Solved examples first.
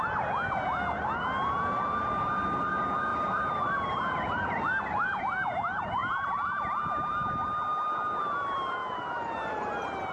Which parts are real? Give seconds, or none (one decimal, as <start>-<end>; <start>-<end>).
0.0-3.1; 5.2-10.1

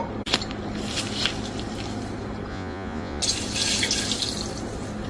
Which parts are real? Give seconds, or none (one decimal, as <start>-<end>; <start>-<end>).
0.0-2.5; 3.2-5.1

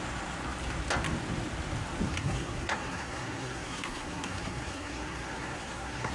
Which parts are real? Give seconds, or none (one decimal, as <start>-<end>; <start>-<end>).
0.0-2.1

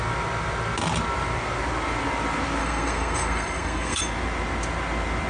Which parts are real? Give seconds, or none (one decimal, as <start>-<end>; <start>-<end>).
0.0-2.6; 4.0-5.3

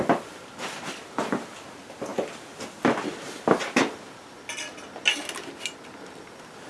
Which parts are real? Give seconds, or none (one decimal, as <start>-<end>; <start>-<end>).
0.0-6.7

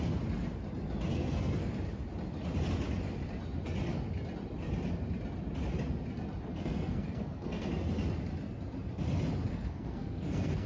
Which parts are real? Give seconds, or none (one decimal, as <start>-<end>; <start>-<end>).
0.0-1.1; 1.7-6.5; 7.7-9.5